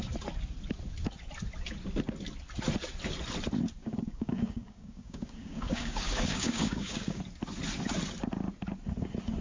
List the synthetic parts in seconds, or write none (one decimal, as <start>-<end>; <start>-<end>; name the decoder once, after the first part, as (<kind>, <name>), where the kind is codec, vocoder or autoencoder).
3.8-7.2 (codec, DAC)